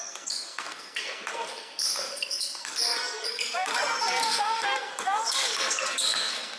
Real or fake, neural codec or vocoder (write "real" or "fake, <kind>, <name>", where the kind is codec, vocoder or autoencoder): fake, codec, SNAC